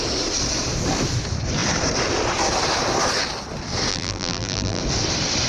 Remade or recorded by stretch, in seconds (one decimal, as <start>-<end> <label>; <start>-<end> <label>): 0.0-3.9 recorded; 3.9-4.8 remade; 4.8-5.5 recorded

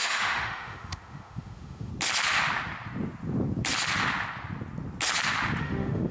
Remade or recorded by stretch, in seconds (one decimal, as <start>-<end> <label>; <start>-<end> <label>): 0.0-1.9 remade; 1.9-5.6 recorded; 5.6-6.1 remade